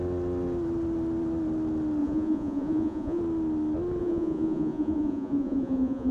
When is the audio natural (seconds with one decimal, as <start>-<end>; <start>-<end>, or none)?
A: 0.0-2.0; 3.2-4.0

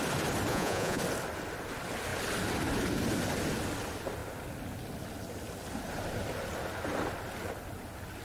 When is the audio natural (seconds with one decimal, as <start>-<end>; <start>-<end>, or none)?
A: 0.0-0.5; 1.0-8.2

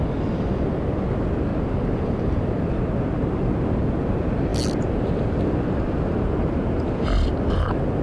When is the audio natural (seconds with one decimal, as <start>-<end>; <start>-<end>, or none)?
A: 0.0-8.0

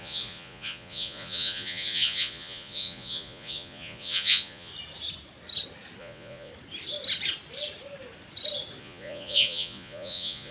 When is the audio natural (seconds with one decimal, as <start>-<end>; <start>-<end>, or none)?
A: 4.7-6.0; 6.5-8.8

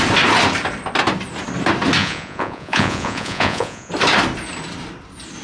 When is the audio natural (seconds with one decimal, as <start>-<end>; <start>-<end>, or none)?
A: 0.0-2.0; 3.9-5.4

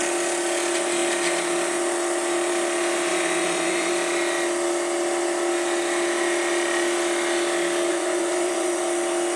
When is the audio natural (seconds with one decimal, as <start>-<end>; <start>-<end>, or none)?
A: 0.0-3.1; 3.9-7.9; 8.8-9.4

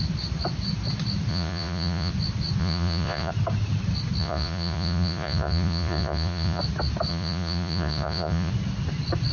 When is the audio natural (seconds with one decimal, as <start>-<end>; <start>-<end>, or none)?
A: 0.0-1.3; 2.1-2.6; 3.3-4.2; 6.6-7.1; 8.5-9.3

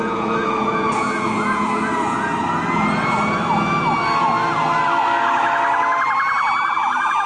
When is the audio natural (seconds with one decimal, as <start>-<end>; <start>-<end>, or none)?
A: 2.3-6.7